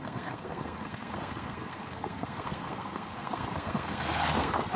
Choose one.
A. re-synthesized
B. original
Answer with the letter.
A